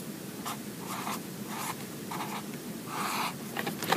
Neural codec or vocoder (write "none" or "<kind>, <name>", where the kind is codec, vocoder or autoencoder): none